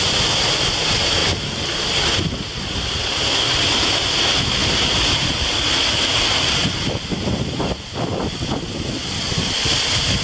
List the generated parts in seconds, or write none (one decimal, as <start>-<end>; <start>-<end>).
none

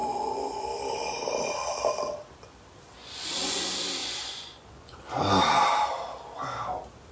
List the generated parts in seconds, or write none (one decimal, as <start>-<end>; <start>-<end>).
0.0-0.6; 3.0-3.6; 4.0-5.0

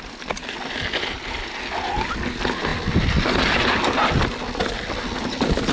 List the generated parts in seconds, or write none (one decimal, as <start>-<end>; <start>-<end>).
none

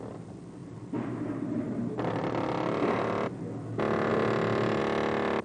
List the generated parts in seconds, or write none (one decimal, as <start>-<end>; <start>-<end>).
0.6-2.1